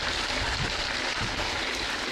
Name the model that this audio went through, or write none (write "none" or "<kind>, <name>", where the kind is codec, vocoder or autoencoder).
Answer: none